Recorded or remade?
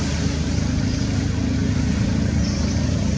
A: recorded